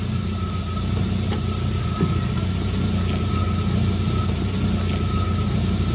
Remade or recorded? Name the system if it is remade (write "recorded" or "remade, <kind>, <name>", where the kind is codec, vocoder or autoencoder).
recorded